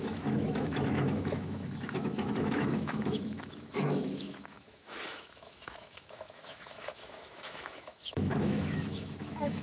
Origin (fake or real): fake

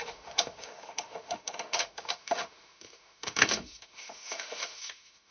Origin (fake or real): fake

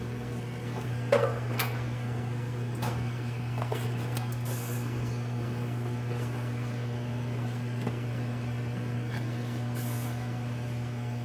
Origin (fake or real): fake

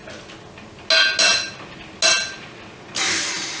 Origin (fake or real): real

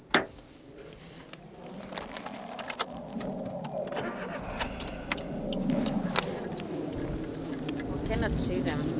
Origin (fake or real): real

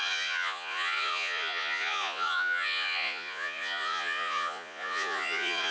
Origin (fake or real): fake